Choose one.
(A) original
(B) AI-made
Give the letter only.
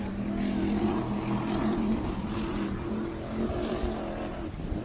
B